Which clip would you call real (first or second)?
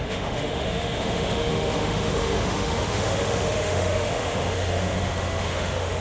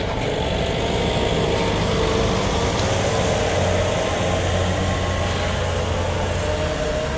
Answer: second